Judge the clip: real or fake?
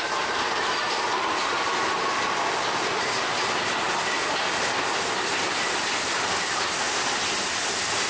real